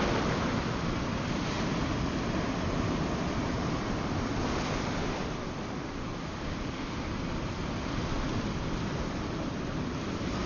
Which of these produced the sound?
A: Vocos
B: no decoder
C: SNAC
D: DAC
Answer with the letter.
B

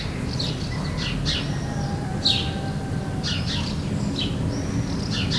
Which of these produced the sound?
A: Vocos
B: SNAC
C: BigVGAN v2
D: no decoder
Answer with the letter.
D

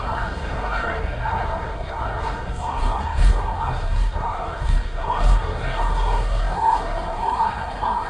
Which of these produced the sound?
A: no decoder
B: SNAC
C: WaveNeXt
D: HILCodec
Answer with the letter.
B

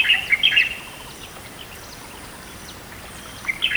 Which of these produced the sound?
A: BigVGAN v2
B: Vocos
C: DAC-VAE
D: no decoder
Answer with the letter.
D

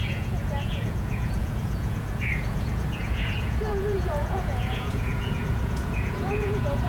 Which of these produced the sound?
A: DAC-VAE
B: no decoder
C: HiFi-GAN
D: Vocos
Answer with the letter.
D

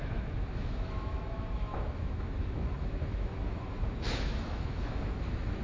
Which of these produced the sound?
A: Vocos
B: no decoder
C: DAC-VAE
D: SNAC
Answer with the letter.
C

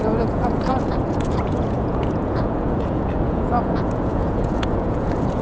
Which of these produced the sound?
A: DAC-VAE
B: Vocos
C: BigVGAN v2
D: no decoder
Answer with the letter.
B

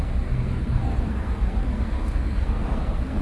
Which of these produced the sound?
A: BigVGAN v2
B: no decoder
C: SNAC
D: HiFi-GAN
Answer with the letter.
C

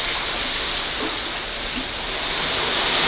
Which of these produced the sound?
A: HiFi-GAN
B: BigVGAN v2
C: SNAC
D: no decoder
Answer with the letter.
D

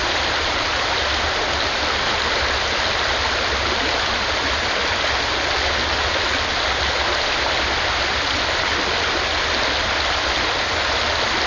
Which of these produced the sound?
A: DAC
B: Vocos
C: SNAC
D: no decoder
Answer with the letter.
D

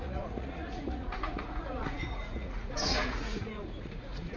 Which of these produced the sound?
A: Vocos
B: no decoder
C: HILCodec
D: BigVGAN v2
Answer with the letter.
A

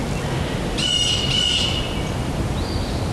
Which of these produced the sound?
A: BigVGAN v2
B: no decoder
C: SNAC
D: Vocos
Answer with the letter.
B